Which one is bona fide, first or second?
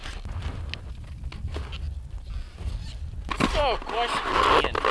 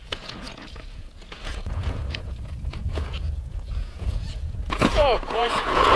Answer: first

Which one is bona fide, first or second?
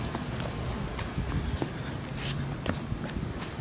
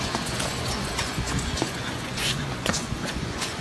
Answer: first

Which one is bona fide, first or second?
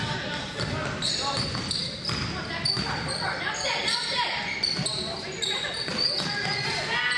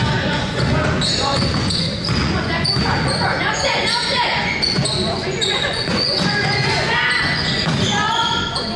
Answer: first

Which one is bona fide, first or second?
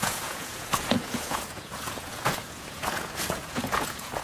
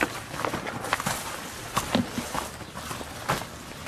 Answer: second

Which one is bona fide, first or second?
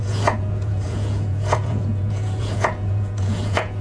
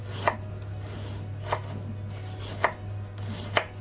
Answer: second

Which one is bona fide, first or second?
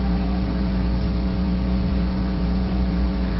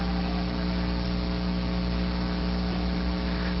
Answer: second